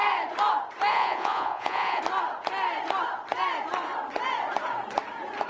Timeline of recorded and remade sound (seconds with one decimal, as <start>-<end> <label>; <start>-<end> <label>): 0.0-0.9 recorded; 0.9-2.0 remade; 2.0-5.5 recorded